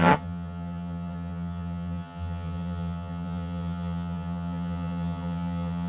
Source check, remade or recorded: remade